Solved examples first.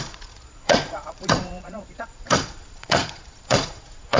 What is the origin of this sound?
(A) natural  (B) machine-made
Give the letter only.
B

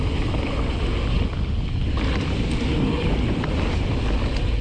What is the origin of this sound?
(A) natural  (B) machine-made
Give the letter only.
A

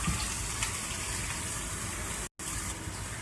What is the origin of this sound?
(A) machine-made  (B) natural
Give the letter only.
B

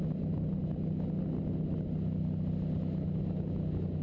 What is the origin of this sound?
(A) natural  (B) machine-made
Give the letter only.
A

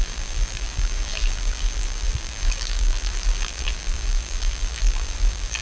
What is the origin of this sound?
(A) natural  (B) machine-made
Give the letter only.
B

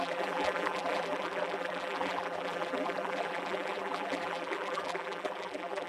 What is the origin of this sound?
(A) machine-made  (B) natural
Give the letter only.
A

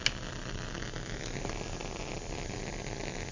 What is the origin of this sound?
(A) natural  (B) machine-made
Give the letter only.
A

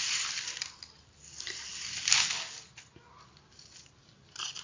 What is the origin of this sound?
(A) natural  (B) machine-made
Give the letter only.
A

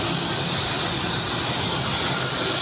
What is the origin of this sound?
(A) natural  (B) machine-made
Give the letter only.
A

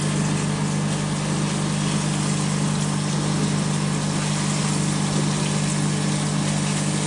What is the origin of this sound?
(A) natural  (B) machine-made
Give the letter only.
A